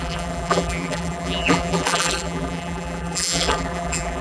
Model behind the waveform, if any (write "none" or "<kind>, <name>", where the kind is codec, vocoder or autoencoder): vocoder, BigVGAN v2